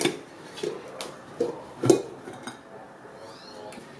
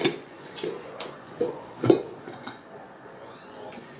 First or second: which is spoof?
second